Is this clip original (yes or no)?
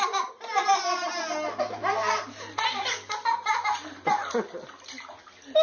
yes